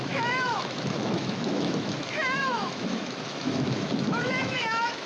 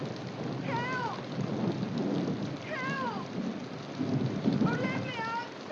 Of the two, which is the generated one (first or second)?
first